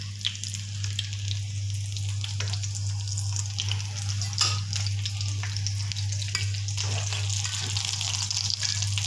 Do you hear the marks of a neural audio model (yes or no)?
no